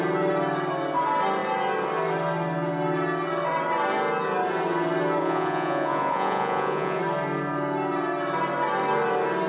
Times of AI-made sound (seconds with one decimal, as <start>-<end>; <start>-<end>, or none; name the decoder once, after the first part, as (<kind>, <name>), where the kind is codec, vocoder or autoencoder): 5.2-7.0 (vocoder, Vocos)